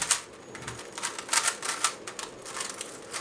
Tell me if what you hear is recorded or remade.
recorded